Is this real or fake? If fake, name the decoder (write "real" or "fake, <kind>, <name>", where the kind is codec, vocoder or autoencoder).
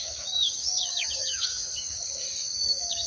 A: fake, codec, DAC